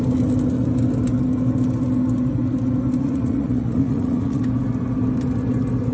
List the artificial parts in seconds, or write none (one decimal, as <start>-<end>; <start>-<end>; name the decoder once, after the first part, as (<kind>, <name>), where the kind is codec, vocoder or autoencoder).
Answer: 3.0-4.4 (vocoder, Vocos)